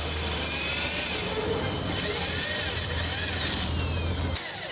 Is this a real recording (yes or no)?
yes